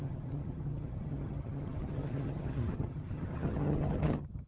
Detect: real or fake fake